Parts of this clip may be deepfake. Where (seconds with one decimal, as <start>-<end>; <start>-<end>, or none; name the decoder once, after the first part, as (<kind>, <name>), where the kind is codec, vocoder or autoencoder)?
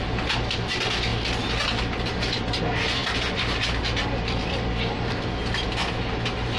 none